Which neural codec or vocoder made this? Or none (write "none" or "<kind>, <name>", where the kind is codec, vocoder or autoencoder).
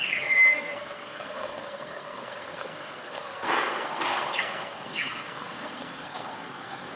codec, SNAC